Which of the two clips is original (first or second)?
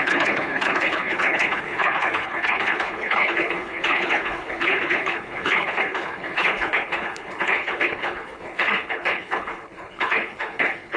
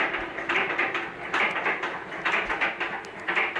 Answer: second